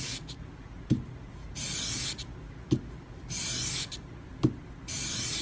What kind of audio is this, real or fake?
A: real